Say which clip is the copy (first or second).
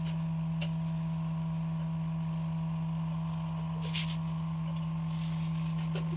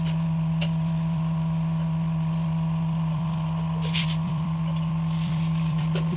second